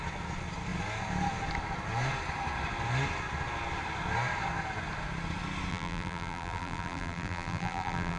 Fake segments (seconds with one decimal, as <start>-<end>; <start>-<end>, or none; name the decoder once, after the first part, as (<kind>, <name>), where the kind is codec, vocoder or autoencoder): 5.7-8.2 (vocoder, BigVGAN v2)